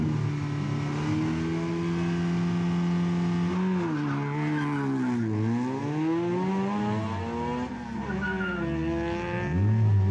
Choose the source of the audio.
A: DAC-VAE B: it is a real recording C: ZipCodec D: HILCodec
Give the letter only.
B